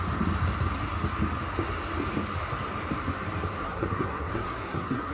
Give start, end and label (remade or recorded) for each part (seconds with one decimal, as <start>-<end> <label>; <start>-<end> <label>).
0.0-3.6 recorded; 3.6-5.1 remade